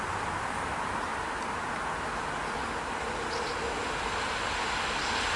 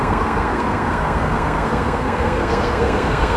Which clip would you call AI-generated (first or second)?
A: second